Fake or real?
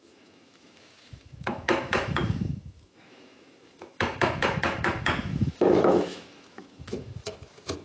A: fake